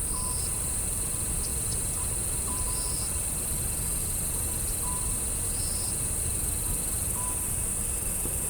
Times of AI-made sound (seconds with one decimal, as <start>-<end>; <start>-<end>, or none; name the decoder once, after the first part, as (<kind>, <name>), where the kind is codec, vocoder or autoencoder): 0.0-1.5 (vocoder, BigVGAN v2); 6.0-8.5